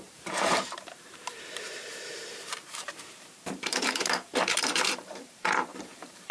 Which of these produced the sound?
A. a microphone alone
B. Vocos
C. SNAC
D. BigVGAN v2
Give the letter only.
D